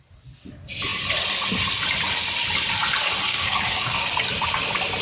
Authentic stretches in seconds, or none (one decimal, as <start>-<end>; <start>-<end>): 0.0-3.3; 4.1-5.0